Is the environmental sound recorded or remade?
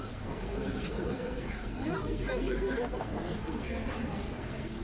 remade